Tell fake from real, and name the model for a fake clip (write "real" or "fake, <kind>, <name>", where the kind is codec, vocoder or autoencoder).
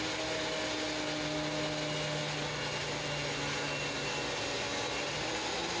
real